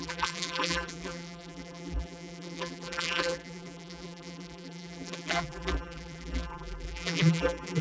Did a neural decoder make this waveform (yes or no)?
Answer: yes